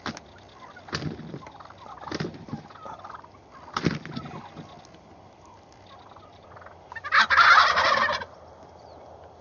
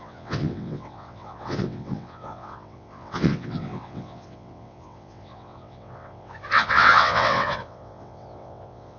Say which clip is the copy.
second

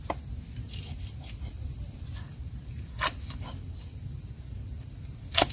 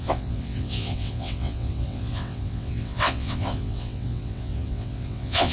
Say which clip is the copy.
second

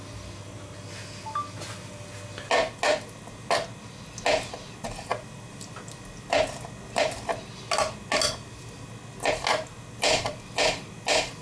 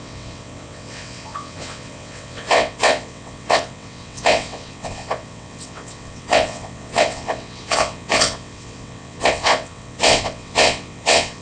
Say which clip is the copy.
second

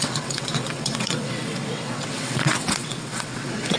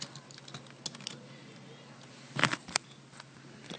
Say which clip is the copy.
first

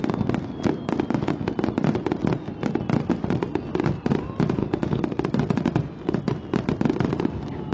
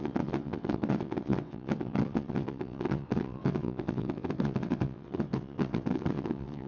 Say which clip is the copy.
second